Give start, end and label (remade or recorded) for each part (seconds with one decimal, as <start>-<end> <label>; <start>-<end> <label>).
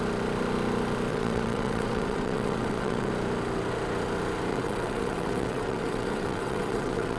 0.0-1.1 recorded; 1.1-3.1 remade; 3.1-4.5 recorded; 4.5-7.2 remade